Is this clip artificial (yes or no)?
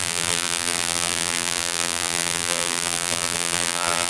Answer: yes